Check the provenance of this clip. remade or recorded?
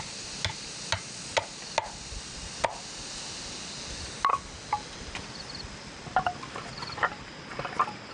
recorded